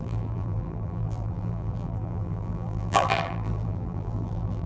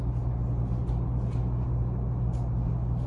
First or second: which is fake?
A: first